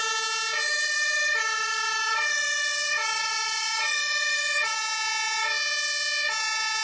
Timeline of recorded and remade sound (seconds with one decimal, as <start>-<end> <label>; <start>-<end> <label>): 0.0-0.7 recorded; 0.7-4.8 remade; 4.8-6.8 recorded